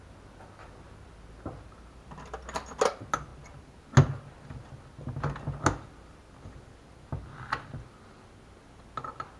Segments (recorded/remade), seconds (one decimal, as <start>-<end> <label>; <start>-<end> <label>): 0.0-9.4 recorded